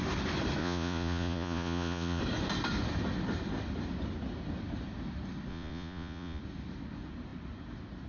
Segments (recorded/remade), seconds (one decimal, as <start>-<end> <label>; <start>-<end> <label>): 0.0-0.6 recorded; 0.6-2.2 remade; 2.2-5.5 recorded; 5.5-6.4 remade; 6.4-8.1 recorded